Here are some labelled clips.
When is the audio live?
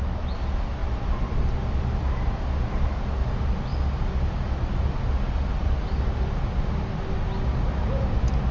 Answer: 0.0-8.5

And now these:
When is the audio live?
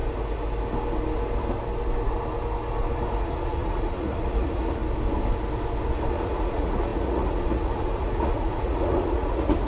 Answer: 0.0-3.2; 4.8-6.1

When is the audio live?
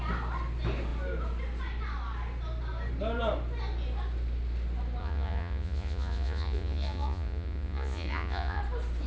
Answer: 0.0-5.0; 8.6-9.1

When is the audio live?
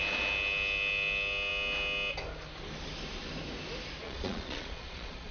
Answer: 0.0-4.0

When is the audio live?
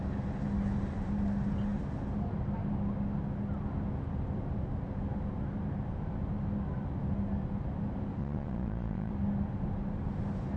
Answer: 0.0-8.2; 9.1-10.6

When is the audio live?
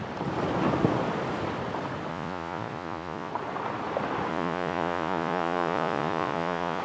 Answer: 0.0-2.1; 3.3-4.3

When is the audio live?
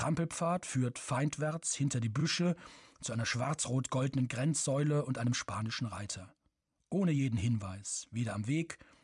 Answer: 0.0-2.2; 3.6-9.0